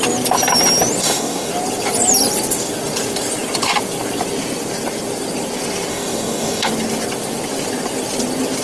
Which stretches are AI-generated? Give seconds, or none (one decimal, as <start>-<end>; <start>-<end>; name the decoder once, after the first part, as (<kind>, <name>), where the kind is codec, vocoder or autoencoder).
1.0-1.5 (codec, DAC); 5.9-6.7